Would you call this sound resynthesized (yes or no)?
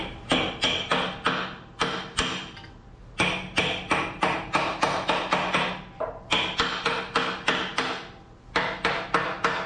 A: no